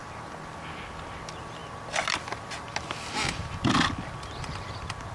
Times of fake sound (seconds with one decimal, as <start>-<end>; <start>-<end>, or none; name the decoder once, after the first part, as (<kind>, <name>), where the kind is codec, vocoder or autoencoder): none